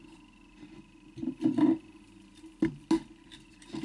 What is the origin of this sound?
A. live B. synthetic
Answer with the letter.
A